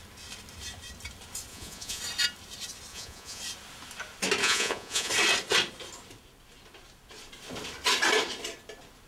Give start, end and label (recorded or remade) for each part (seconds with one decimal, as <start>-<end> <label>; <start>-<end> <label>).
0.0-1.5 recorded; 1.5-2.0 remade; 2.0-2.9 recorded; 2.9-3.4 remade; 3.4-4.4 recorded; 4.4-5.1 remade; 5.1-9.1 recorded